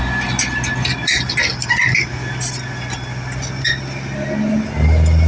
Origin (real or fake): real